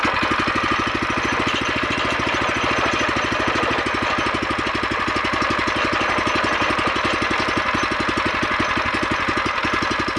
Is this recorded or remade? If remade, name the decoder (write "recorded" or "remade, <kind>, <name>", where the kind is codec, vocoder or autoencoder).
recorded